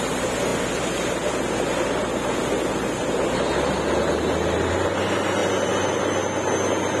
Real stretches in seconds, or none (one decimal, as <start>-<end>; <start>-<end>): 0.0-7.0